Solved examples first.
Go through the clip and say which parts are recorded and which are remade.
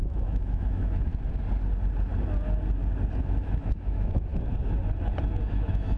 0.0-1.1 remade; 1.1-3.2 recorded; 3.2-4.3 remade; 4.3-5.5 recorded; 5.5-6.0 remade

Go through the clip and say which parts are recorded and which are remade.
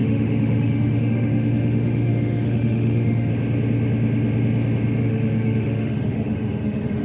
0.0-3.3 remade; 3.3-5.0 recorded; 5.0-7.0 remade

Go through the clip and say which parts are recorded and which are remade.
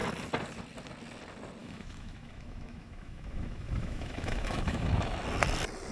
0.0-1.6 recorded; 1.6-5.1 remade; 5.1-5.9 recorded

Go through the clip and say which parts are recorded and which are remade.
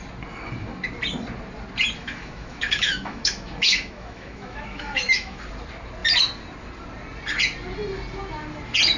0.0-2.0 recorded; 2.0-5.4 remade; 5.4-9.0 recorded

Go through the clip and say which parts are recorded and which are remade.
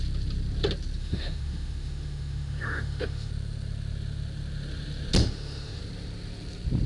0.0-1.0 recorded; 1.0-3.3 remade; 3.3-5.2 recorded; 5.2-5.8 remade; 5.8-6.9 recorded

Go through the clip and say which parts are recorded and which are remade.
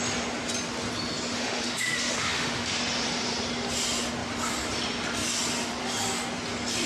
0.0-1.3 recorded; 1.3-2.8 remade; 2.8-6.9 recorded